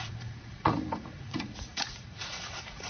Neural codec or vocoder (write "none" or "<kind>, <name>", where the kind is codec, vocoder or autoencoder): vocoder, Vocos